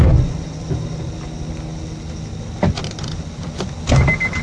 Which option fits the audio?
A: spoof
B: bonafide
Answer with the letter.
B